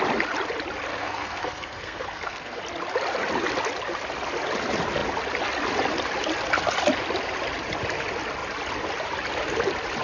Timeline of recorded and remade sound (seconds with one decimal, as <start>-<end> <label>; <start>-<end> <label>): 0.0-0.9 recorded; 0.9-2.6 remade; 2.6-10.0 recorded